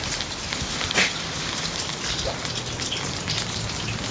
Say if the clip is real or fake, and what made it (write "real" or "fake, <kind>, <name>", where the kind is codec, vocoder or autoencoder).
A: real